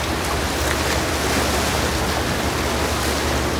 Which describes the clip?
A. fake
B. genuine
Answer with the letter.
B